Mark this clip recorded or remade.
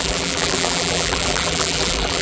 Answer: remade